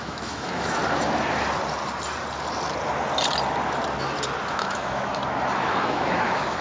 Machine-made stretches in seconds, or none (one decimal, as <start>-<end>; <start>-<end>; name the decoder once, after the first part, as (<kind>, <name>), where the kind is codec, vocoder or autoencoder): 0.0-0.8 (autoencoder, DAC-VAE); 4.5-5.2; 5.7-6.6